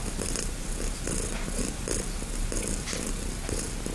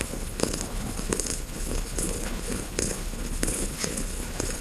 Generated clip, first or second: second